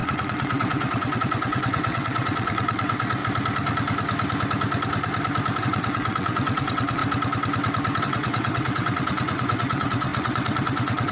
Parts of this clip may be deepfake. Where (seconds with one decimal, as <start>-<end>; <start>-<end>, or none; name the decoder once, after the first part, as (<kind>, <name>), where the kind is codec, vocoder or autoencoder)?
0.0-3.2 (vocoder, WaveNeXt); 5.6-7.0; 8.0-11.1